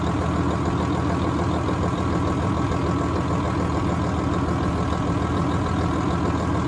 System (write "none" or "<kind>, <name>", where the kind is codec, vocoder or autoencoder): none